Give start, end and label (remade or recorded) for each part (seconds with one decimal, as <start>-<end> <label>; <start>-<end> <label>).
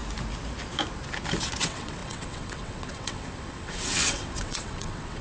0.0-1.6 recorded; 1.6-5.2 remade